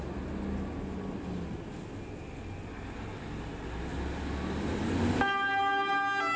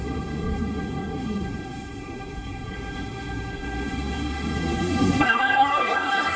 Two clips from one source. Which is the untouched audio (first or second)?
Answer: first